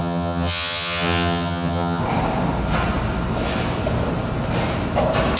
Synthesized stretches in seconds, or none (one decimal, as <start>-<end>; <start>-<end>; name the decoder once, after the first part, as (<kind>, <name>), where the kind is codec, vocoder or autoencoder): 0.0-2.0 (vocoder, HiFi-GAN)